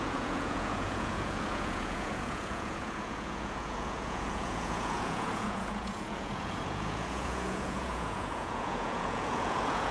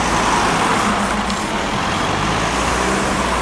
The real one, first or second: second